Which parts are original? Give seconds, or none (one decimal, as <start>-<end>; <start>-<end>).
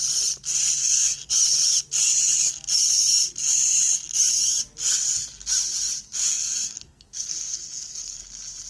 0.0-0.8; 1.3-6.3; 8.2-8.7